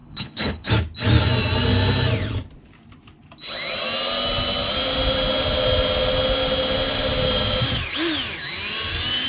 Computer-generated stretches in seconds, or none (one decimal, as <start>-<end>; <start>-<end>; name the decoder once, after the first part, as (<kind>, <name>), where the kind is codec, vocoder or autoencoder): 0.0-0.7 (codec, HILCodec)